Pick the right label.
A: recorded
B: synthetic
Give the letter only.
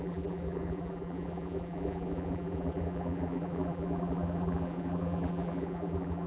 B